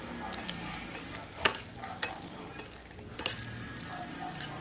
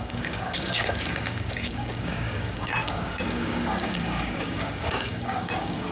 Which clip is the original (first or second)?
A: first